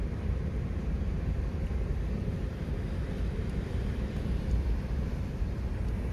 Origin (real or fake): fake